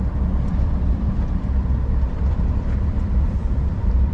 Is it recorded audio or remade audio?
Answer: remade